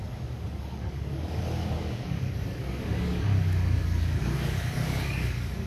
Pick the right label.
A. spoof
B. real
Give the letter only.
A